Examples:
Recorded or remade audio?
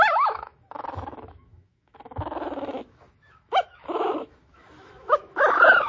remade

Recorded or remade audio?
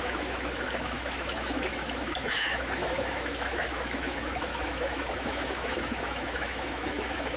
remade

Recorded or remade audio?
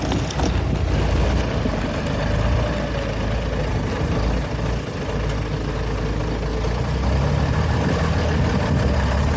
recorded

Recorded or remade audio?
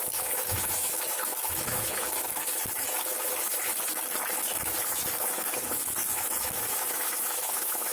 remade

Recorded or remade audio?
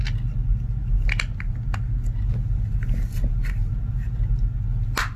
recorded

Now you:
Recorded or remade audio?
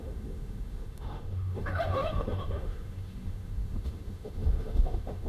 remade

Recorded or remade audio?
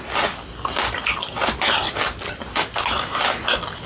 recorded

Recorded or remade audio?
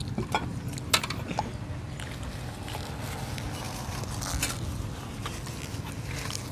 recorded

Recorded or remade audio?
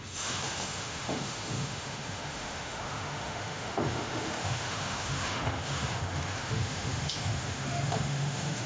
remade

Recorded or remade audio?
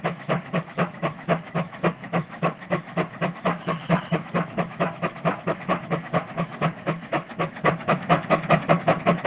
remade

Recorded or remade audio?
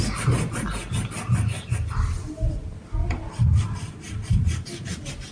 recorded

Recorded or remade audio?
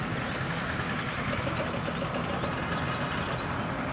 recorded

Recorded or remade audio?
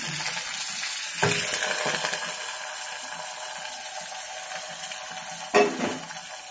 recorded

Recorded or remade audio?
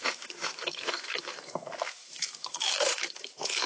remade